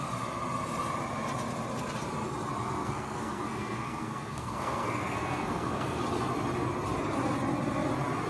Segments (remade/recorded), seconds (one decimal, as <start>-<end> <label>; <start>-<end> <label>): 0.0-2.8 recorded; 2.8-6.0 remade; 6.0-8.3 recorded